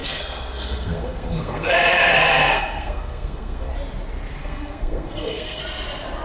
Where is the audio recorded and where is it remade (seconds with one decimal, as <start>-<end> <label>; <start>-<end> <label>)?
0.0-3.7 remade; 3.7-4.4 recorded; 4.4-5.6 remade; 5.6-6.2 recorded